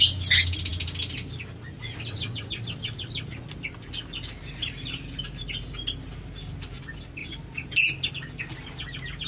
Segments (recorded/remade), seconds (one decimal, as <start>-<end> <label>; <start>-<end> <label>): 0.0-9.3 recorded